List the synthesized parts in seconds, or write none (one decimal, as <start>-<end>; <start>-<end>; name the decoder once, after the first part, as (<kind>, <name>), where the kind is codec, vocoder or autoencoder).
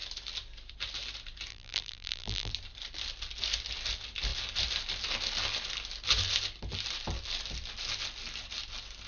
1.5-2.5 (vocoder, BigVGAN v2)